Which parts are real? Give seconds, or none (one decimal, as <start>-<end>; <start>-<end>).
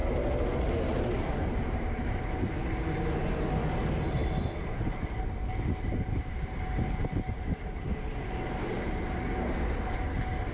0.0-10.5